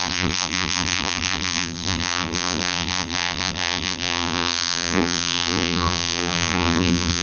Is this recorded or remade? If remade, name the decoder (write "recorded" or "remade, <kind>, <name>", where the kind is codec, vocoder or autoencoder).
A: remade, vocoder, BigVGAN v2